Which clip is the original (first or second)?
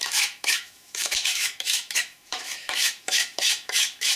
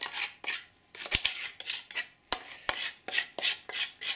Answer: second